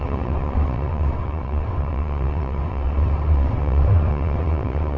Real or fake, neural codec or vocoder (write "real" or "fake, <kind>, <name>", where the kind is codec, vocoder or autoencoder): fake, vocoder, WaveNeXt